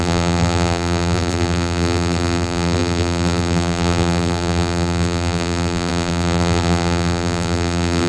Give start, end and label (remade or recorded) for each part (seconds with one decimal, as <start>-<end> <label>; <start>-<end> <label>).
0.0-8.1 remade